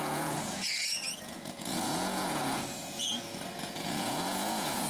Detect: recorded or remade remade